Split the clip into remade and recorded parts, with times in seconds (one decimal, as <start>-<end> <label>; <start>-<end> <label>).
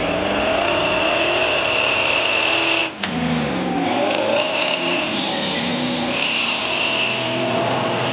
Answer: 0.0-0.8 recorded; 0.8-2.2 remade; 2.2-8.1 recorded